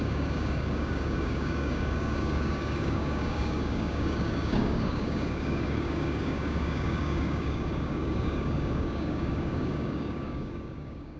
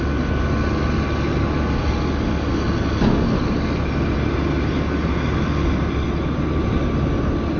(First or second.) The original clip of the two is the second